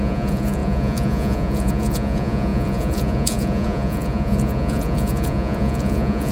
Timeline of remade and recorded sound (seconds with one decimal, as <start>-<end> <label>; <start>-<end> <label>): 0.0-6.3 remade